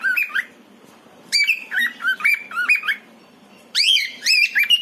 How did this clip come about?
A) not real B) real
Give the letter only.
A